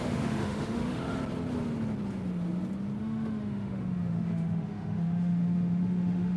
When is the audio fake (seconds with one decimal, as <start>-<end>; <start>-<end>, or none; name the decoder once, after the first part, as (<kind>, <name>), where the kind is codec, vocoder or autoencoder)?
0.0-1.2 (autoencoder, DAC-VAE); 3.0-6.4